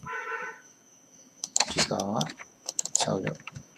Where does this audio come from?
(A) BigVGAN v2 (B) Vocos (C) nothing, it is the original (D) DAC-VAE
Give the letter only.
D